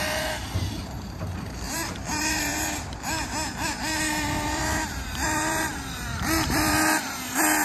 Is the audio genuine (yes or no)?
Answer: no